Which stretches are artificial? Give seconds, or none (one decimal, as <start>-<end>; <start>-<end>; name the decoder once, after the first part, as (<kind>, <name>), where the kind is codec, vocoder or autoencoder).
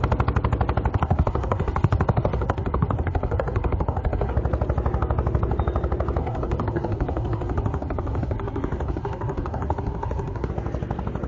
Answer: 0.9-4.3 (codec, SNAC); 6.2-10.5